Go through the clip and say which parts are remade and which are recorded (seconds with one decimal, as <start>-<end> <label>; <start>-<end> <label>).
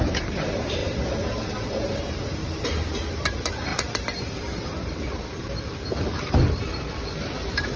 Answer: 0.0-2.4 remade; 2.4-3.1 recorded; 3.1-7.8 remade